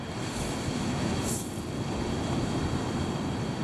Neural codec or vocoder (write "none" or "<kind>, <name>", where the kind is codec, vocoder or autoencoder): none